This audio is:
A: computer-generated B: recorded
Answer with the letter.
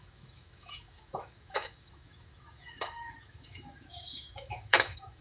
A